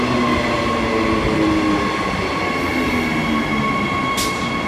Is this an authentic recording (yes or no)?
yes